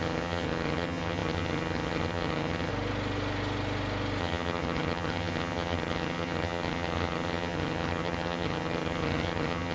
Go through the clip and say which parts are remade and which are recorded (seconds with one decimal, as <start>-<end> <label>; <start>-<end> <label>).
0.0-2.7 remade; 2.7-4.2 recorded; 4.2-9.7 remade